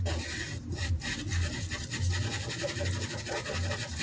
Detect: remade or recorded recorded